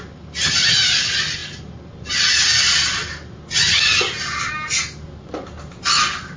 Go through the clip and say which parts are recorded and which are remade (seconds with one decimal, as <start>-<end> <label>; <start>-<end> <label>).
0.0-6.4 recorded